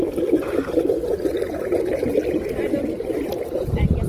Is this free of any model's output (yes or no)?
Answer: yes